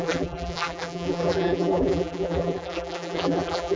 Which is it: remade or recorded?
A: remade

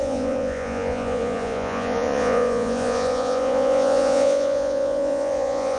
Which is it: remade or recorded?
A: remade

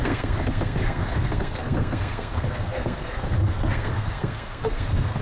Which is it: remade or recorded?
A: remade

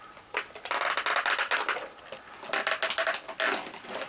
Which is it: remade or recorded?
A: recorded